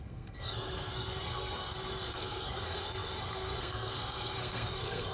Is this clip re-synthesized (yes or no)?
yes